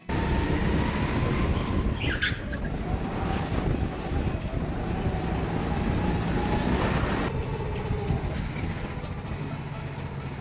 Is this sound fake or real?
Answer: real